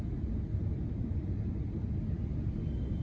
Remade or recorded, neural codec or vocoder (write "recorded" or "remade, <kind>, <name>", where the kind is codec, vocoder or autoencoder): remade, vocoder, BigVGAN v2